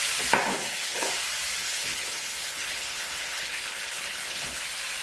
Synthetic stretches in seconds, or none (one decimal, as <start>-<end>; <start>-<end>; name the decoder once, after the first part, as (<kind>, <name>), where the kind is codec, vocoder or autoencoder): 0.5-1.1 (codec, HILCodec); 1.6-4.6